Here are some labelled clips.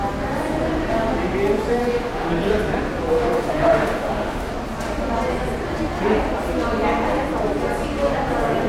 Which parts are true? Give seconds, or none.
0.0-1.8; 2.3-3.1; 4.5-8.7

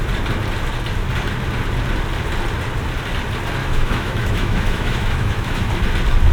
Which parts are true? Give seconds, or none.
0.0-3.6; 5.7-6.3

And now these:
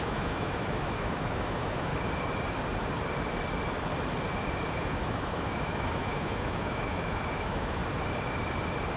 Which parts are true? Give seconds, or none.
1.9-4.7; 7.8-9.0

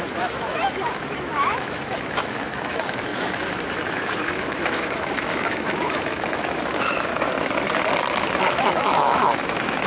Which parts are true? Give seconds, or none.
7.1-8.1

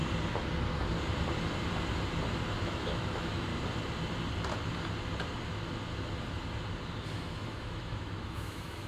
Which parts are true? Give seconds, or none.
0.0-2.6; 3.5-7.1

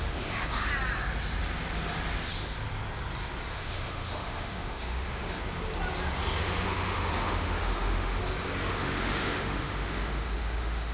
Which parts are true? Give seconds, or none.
0.7-3.5; 5.4-6.4; 8.2-8.7